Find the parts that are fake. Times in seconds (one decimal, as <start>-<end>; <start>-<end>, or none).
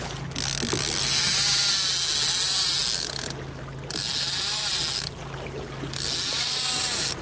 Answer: none